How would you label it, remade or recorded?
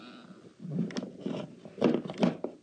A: recorded